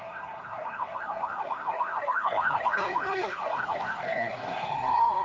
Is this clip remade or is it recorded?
remade